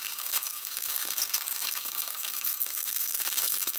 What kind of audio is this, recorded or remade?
remade